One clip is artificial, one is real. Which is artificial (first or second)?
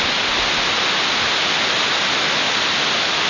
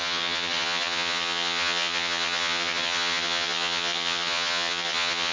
second